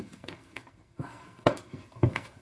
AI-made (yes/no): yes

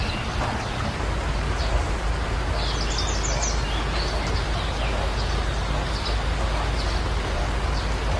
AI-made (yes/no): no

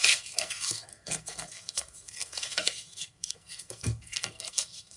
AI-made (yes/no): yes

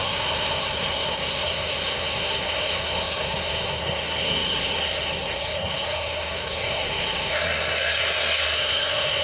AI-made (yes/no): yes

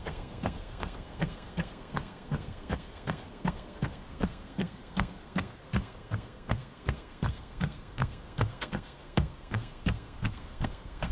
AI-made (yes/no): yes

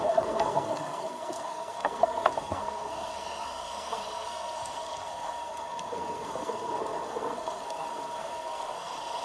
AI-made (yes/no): yes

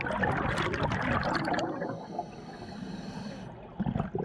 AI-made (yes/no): no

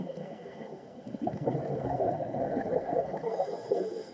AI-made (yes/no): yes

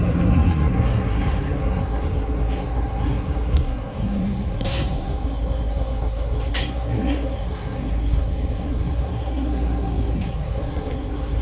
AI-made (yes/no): yes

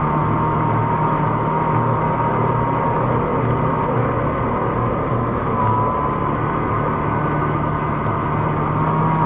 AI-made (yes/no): no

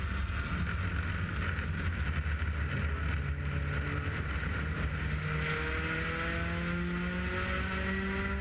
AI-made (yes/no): no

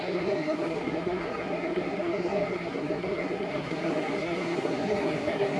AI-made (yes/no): yes